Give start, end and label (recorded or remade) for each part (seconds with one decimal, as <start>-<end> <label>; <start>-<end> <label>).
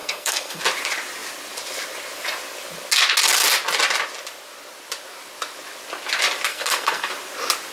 0.0-0.6 remade; 0.6-6.5 recorded; 6.5-7.1 remade; 7.1-7.7 recorded